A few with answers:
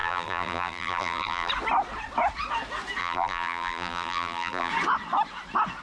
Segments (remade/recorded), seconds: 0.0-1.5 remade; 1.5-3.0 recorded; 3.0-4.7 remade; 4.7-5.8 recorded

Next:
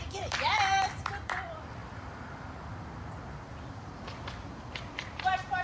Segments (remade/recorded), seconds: 0.0-1.8 remade; 1.8-3.6 recorded; 3.6-5.6 remade

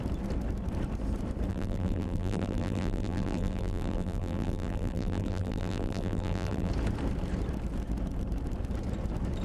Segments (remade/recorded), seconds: 0.0-1.5 recorded; 1.5-6.7 remade; 6.7-9.4 recorded

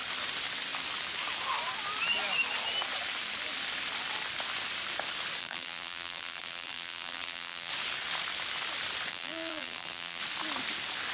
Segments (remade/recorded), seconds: 0.0-5.4 recorded; 5.4-7.7 remade; 7.7-9.1 recorded; 9.1-10.2 remade; 10.2-11.1 recorded

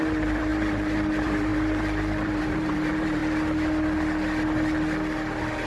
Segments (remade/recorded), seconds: 0.0-3.2 remade; 3.2-5.7 recorded

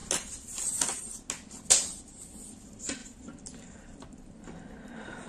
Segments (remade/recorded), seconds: 0.0-3.0 recorded; 3.0-4.5 remade; 4.5-5.3 recorded

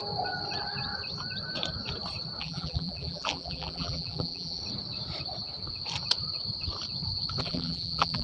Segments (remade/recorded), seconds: 0.0-2.4 recorded; 2.4-4.6 remade; 4.6-7.4 recorded; 7.4-8.2 remade